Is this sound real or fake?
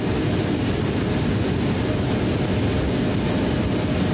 real